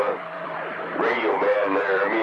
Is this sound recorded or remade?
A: remade